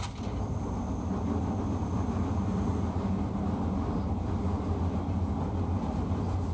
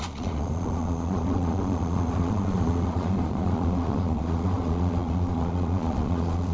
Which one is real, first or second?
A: first